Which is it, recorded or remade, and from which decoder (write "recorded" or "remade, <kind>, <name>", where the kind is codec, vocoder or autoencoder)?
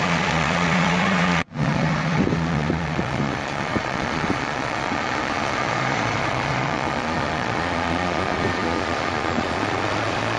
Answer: remade, vocoder, Vocos